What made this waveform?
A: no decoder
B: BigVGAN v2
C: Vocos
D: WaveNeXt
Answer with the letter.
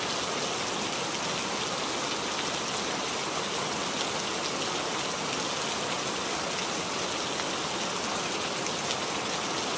A